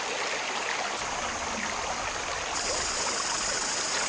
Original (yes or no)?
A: yes